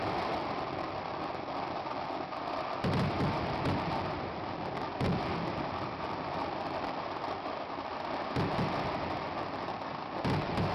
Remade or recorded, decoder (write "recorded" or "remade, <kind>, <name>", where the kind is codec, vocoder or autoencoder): recorded